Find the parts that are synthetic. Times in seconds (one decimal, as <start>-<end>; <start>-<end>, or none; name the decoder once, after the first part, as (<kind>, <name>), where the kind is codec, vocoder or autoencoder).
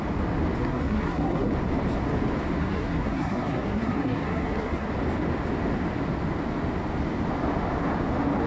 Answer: 0.6-1.5 (codec, SNAC); 2.6-4.9